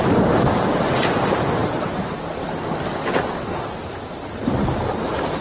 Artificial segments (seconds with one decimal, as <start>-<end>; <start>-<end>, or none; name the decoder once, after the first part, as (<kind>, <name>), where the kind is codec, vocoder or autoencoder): none